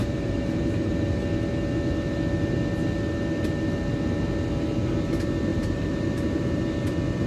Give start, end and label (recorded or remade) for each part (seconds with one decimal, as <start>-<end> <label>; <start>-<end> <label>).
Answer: 0.0-0.9 remade; 0.9-5.5 recorded; 5.5-6.6 remade; 6.6-7.3 recorded